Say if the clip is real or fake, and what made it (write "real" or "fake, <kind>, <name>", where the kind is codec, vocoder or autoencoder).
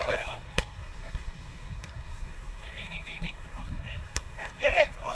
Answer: fake, codec, SNAC